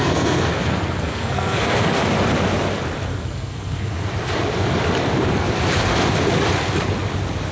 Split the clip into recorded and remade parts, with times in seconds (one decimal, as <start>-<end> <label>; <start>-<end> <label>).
0.0-2.0 remade; 2.0-3.1 recorded; 3.1-4.1 remade; 4.1-7.5 recorded